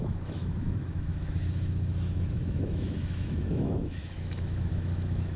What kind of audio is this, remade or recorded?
remade